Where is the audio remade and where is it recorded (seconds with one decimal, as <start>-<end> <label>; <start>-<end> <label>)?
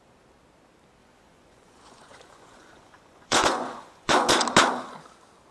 0.0-1.0 recorded; 1.0-4.3 remade; 4.3-5.5 recorded